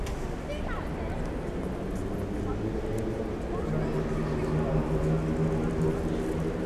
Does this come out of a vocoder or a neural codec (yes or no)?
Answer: no